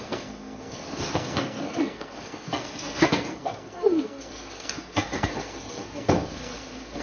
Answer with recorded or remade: remade